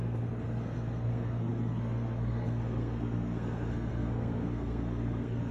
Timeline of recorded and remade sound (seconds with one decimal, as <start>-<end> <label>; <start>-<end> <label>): 0.0-5.5 remade